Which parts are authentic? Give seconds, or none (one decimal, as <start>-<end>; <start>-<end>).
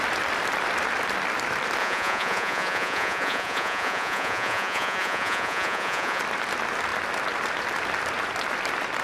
0.0-1.8; 6.2-9.0